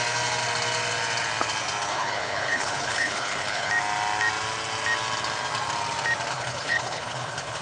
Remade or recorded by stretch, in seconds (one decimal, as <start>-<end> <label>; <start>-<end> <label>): 0.0-1.9 recorded; 1.9-3.7 remade; 3.7-6.3 recorded; 6.3-7.6 remade